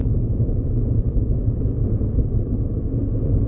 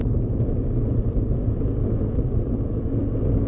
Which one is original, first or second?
second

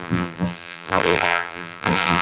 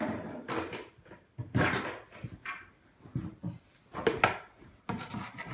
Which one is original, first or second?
second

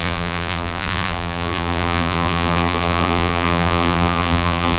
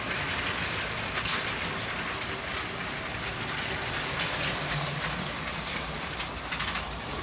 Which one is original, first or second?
second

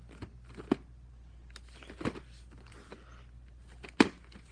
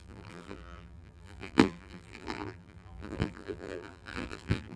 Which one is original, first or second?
first